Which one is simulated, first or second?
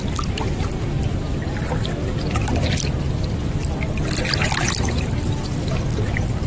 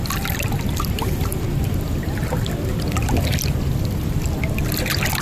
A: second